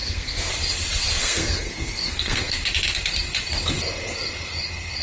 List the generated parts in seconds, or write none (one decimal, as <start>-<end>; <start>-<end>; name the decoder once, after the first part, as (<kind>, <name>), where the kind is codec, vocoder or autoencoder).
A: 0.0-0.5 (codec, SNAC); 1.2-2.6